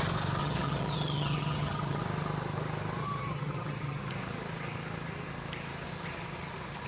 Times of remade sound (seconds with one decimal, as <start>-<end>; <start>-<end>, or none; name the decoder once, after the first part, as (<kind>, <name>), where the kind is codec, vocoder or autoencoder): 0.4-2.0 (vocoder, HiFi-GAN); 3.0-4.1